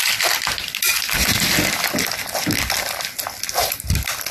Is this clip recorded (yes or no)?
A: yes